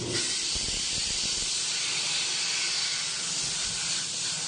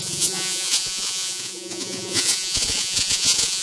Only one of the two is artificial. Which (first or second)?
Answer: second